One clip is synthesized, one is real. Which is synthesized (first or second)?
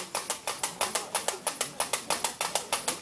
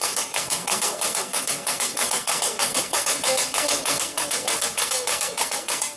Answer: second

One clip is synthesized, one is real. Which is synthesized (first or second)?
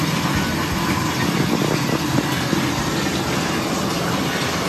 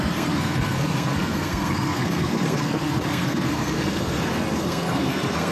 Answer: second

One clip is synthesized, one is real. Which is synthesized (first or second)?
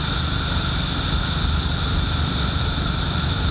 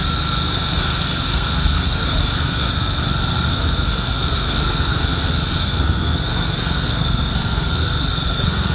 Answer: second